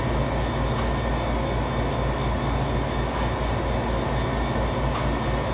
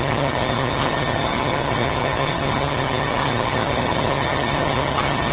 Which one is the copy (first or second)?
second